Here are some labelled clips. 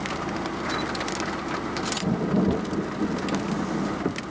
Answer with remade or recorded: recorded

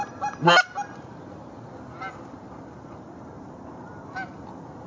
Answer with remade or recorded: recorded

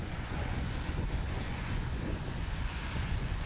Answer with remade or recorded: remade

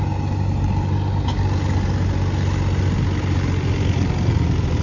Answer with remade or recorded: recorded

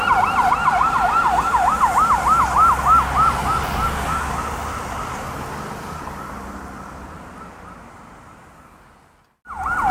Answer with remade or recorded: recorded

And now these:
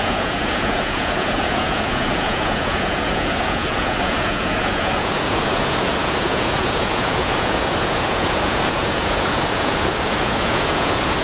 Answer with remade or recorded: remade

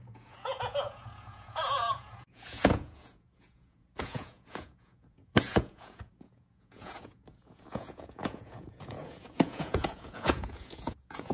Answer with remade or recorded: remade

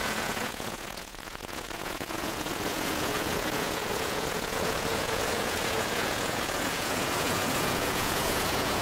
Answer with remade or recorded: remade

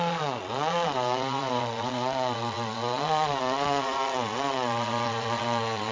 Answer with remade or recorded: remade